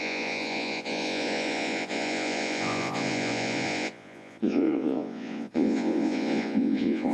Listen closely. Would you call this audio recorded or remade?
remade